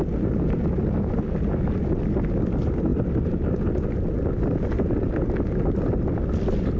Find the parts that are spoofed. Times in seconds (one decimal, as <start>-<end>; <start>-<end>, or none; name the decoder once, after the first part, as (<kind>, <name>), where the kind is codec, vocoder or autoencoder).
none